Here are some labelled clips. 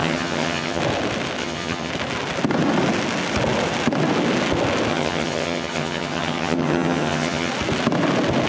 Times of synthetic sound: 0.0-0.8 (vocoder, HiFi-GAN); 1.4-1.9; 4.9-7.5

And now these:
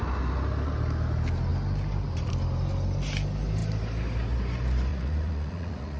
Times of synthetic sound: 4.9-6.0 (vocoder, Vocos)

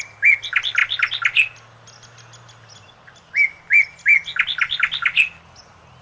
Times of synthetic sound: none